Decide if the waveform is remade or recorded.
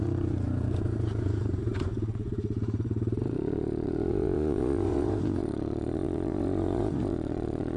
remade